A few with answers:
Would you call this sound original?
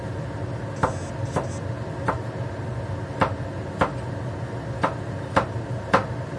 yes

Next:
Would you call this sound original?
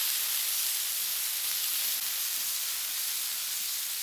yes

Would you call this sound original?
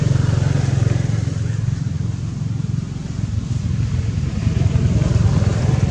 yes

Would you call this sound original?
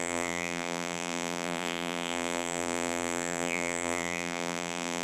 no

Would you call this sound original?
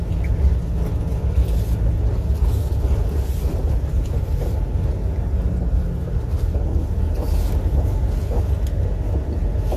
yes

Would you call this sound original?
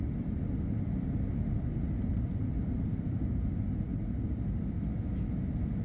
yes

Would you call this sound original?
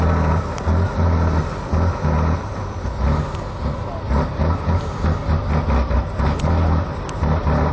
yes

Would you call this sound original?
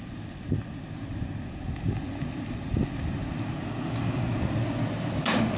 yes